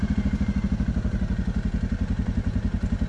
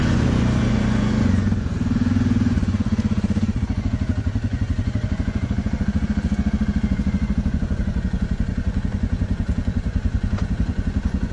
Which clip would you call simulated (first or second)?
second